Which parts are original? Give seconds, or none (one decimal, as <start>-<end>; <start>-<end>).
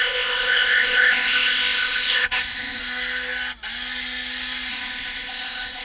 2.8-4.7